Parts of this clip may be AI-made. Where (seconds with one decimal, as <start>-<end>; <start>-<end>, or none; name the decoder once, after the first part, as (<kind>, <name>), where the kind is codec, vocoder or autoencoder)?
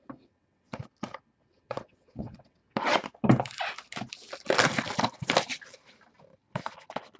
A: 0.0-0.8 (vocoder, WaveNeXt); 1.5-2.6